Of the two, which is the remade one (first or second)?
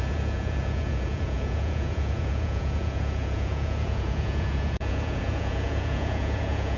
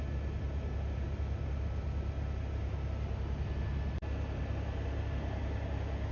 first